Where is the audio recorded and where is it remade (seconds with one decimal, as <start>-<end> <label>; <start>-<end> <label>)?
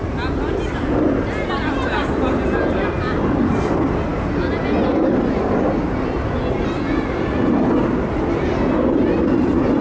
0.0-9.8 recorded